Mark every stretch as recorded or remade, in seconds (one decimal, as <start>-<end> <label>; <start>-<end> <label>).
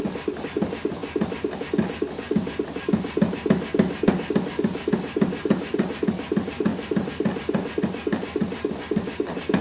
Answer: 0.0-9.6 recorded